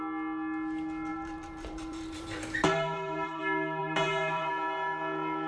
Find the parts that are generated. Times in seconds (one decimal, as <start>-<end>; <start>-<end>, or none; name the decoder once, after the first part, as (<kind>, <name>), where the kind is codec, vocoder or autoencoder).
1.1-3.4 (vocoder, BigVGAN v2); 3.8-4.5